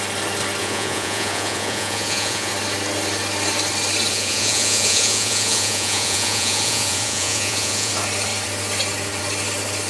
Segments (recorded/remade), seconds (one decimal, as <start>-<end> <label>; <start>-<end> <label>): 0.0-0.6 recorded; 0.6-2.5 remade; 2.5-4.1 recorded; 4.1-7.9 remade; 7.9-9.9 recorded